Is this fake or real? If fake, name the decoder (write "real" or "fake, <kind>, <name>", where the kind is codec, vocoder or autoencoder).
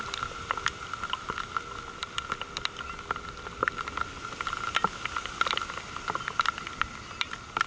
real